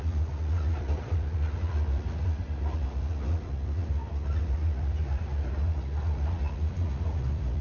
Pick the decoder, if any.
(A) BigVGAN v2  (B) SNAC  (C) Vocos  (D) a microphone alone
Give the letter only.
C